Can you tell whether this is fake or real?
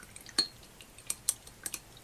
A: real